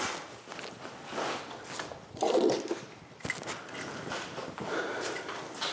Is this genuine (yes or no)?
yes